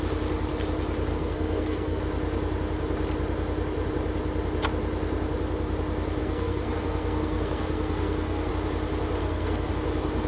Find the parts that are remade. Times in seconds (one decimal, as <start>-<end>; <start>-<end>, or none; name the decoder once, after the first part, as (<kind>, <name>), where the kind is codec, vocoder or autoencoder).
1.1-2.0 (codec, SNAC); 6.2-8.5; 9.2-9.7